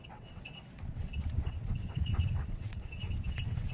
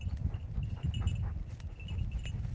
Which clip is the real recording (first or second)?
second